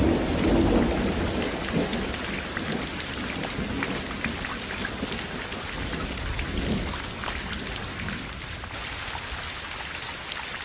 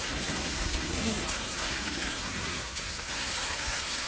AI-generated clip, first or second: second